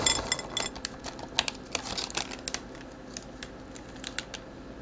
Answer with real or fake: real